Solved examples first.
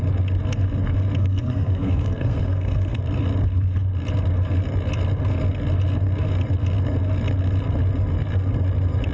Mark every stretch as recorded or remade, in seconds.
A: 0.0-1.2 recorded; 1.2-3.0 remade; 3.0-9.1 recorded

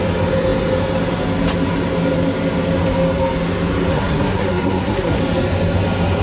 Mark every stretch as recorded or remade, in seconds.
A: 0.0-3.9 recorded; 3.9-5.2 remade; 5.2-6.2 recorded

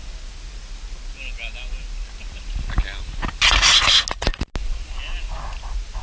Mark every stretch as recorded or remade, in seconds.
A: 0.0-6.0 recorded

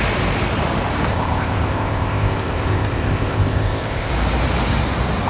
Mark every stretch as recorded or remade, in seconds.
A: 0.0-1.1 recorded; 1.1-4.1 remade; 4.1-5.3 recorded

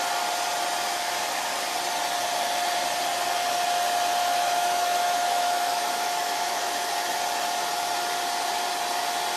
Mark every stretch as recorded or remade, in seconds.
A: 0.0-4.2 recorded; 4.2-6.9 remade; 6.9-9.4 recorded

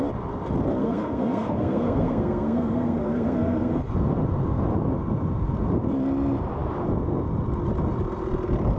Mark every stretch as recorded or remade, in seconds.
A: 0.0-0.8 recorded; 0.8-3.8 remade; 3.8-8.8 recorded